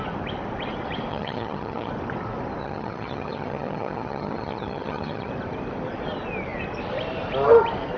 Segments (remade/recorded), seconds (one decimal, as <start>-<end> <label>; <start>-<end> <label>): 0.0-1.1 recorded; 1.1-1.9 remade; 1.9-2.6 recorded; 2.6-5.3 remade; 5.3-8.0 recorded